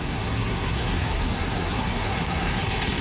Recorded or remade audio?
remade